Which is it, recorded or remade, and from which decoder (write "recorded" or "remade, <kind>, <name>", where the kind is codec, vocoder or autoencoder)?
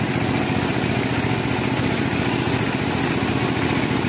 recorded